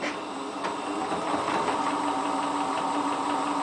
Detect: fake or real real